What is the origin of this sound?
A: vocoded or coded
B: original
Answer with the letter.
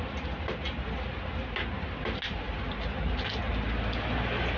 B